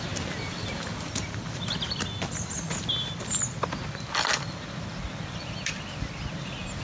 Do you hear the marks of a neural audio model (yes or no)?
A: no